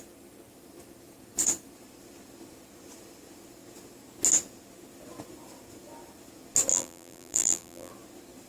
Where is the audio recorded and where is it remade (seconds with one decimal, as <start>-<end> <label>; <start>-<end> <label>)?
0.0-6.7 recorded; 6.7-7.9 remade; 7.9-8.5 recorded